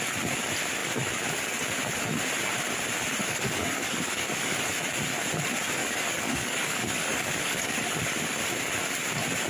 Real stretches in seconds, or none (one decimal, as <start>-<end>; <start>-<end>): 0.0-3.2; 4.7-5.8; 7.8-9.5